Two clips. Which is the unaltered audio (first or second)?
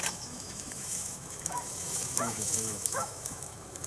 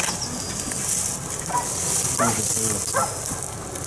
second